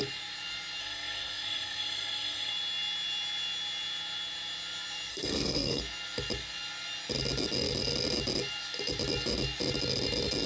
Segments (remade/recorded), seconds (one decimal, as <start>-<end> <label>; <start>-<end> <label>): 0.0-0.8 recorded; 0.8-2.5 remade; 2.5-5.1 recorded; 5.1-5.8 remade; 5.8-10.5 recorded